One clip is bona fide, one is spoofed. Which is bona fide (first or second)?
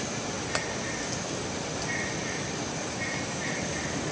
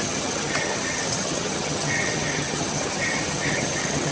first